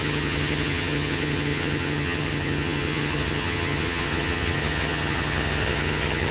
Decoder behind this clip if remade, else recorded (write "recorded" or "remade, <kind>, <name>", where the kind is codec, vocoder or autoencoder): remade, vocoder, HiFi-GAN